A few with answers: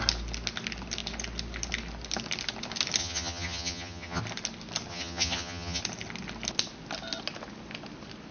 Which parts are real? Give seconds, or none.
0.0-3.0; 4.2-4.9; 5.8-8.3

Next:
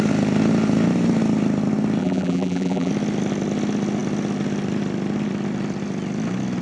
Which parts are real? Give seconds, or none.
0.0-2.0; 2.9-6.6

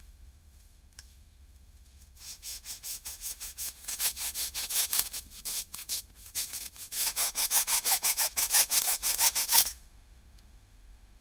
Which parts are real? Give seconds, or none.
none

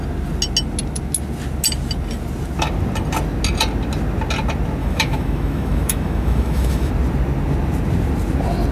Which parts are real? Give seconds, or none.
0.0-4.8; 6.9-8.7

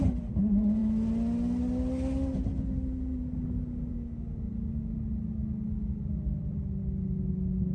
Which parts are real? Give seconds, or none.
0.0-7.7

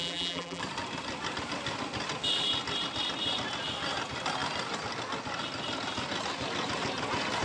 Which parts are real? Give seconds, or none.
0.6-7.4

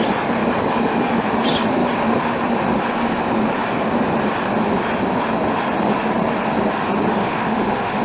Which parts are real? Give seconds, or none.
0.0-7.1

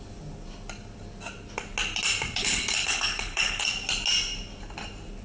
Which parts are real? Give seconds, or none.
0.0-2.4; 3.6-5.2